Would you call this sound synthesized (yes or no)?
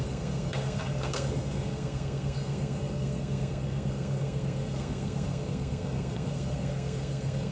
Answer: yes